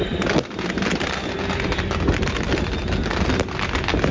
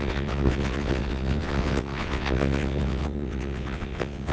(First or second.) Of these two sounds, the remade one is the second